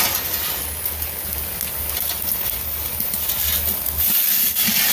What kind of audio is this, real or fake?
real